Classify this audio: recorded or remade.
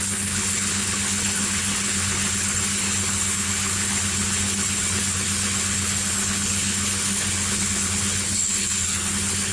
remade